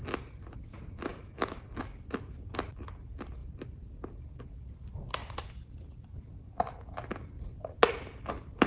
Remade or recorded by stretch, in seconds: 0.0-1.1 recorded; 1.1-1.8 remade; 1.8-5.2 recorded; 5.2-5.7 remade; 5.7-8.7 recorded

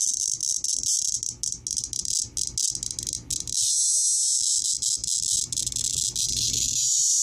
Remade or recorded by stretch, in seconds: 0.0-7.2 recorded

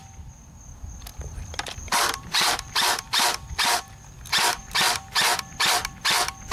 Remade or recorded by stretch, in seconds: 0.0-1.1 recorded; 1.1-3.8 remade; 3.8-6.5 recorded